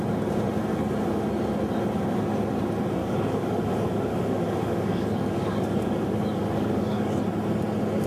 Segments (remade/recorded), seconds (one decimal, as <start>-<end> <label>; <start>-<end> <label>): 0.0-0.7 recorded; 0.7-1.2 remade; 1.2-3.0 recorded; 3.0-7.2 remade; 7.2-8.1 recorded